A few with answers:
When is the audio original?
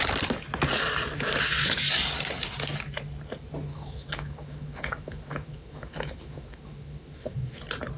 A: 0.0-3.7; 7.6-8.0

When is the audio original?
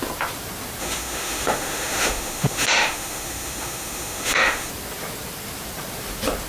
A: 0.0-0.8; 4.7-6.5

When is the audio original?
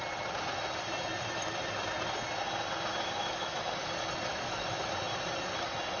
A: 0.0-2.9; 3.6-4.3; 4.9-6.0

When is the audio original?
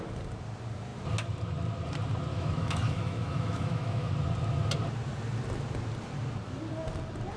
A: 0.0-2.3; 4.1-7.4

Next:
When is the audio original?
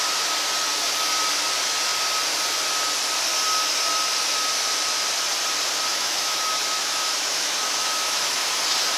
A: 0.0-5.9; 8.5-9.0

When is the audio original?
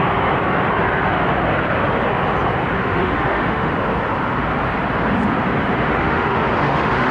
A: 0.0-2.8; 3.7-5.9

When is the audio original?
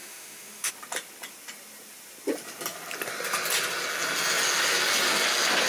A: 0.7-5.7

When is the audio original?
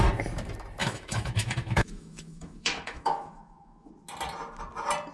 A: 0.0-0.8; 3.9-5.1